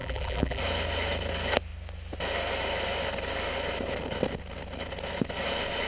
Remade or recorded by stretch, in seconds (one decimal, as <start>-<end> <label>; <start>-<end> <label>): 0.0-0.6 remade; 0.6-5.9 recorded